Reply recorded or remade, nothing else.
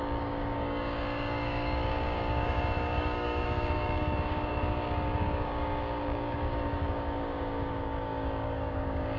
remade